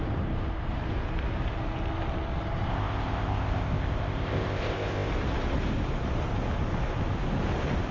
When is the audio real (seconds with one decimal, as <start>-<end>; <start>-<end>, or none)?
0.0-2.7; 5.1-7.9